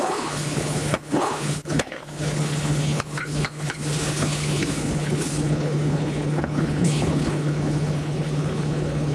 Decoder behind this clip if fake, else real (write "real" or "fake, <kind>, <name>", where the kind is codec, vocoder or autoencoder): fake, codec, HILCodec